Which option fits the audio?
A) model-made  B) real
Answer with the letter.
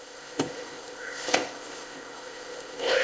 A